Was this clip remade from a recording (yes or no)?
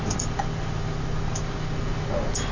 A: no